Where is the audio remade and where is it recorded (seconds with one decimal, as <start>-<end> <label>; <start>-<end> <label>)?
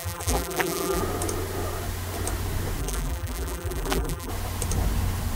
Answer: 0.0-1.0 remade; 1.0-2.8 recorded; 2.8-4.3 remade; 4.3-5.3 recorded